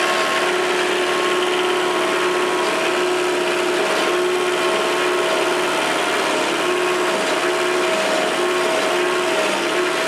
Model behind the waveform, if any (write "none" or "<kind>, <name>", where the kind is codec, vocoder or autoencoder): none